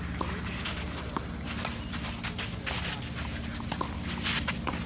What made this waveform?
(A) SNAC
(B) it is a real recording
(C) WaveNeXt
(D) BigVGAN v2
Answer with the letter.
B